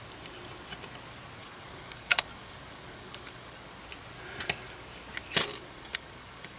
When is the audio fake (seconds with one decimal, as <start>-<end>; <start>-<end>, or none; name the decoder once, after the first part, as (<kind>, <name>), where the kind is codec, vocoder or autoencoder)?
1.4-3.8 (codec, DAC); 5.5-6.6